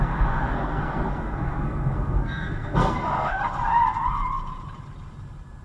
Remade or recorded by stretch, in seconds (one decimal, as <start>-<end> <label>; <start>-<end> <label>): 0.0-3.4 remade; 3.4-5.6 recorded